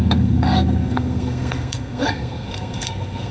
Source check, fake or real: fake